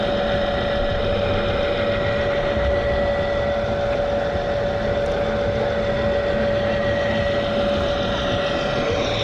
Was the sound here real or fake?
real